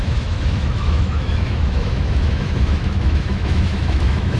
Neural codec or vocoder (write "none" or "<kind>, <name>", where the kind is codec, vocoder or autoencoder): autoencoder, DAC-VAE